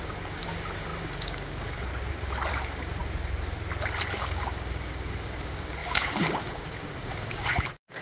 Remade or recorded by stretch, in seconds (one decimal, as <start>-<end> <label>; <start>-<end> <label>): 0.0-1.9 remade; 1.9-2.5 recorded; 2.5-3.0 remade; 3.0-4.1 recorded; 4.1-8.0 remade